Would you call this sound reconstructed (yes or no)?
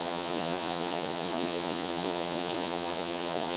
yes